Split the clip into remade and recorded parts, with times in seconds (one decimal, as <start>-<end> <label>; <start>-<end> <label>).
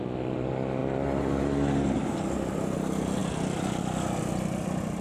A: 0.0-5.0 recorded